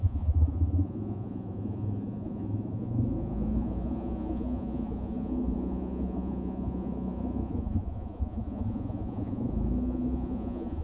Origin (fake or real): fake